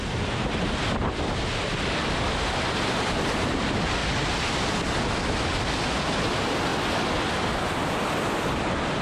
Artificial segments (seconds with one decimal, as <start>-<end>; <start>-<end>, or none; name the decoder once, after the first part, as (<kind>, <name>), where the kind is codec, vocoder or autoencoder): none